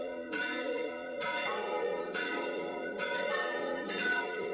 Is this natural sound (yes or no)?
no